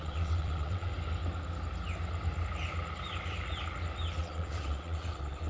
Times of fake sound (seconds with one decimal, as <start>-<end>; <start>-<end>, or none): 0.0-0.9; 4.2-5.5